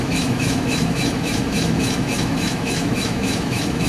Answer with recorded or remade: remade